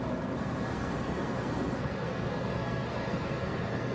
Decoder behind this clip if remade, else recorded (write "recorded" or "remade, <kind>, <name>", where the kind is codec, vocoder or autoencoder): remade, codec, SNAC